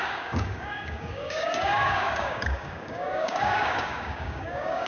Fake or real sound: fake